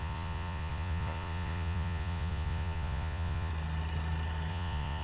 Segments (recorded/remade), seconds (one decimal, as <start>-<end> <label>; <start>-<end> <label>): 0.0-3.5 remade; 3.5-4.5 recorded; 4.5-5.0 remade